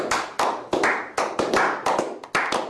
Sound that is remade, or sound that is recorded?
recorded